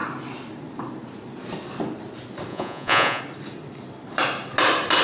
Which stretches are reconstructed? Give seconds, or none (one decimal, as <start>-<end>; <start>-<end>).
2.5-3.2